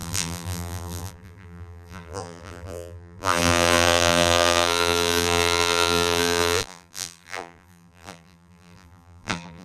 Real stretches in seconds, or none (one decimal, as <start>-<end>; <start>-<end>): none